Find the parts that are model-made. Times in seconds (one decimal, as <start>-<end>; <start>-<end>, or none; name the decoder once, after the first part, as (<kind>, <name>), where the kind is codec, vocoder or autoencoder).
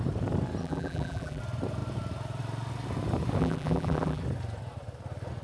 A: 0.6-1.4 (vocoder, BigVGAN v2); 3.4-4.2